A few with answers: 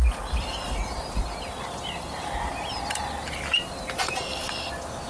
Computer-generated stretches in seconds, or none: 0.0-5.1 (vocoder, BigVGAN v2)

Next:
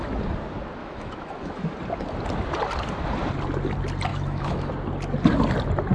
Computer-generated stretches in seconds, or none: 0.8-1.7 (autoencoder, DAC-VAE); 4.1-4.7

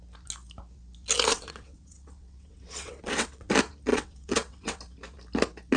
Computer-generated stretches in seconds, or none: 1.3-3.5 (vocoder, WaveNeXt); 3.9-4.8

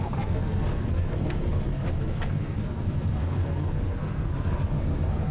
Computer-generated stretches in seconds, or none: 0.0-5.3 (codec, SNAC)

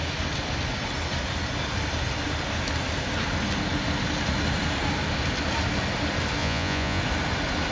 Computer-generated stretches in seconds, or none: 6.4-7.0 (vocoder, Vocos)